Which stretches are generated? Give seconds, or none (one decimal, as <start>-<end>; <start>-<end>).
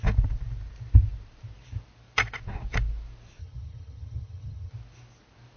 3.4-4.7